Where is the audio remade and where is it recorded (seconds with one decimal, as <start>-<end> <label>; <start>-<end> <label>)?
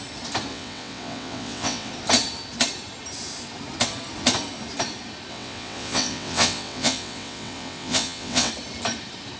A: 0.0-0.5 recorded; 0.5-1.9 remade; 1.9-5.3 recorded; 5.3-8.5 remade; 8.5-9.4 recorded